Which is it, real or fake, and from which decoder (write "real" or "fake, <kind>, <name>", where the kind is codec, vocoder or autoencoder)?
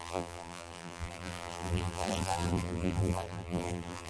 fake, vocoder, BigVGAN v2